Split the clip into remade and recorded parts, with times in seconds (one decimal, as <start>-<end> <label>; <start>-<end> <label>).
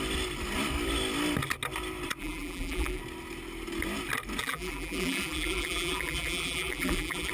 0.0-2.2 recorded; 2.2-3.0 remade; 3.0-4.4 recorded; 4.4-7.3 remade